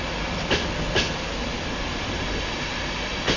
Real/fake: real